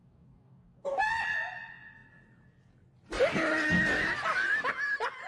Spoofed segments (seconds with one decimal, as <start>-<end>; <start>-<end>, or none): 0.0-1.0